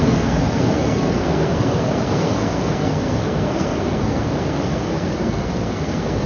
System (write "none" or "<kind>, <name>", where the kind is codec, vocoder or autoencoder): codec, SNAC